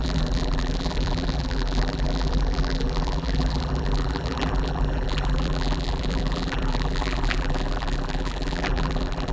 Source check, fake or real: fake